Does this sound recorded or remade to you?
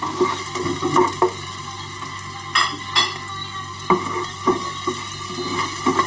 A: recorded